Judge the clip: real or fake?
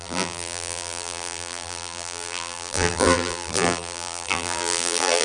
fake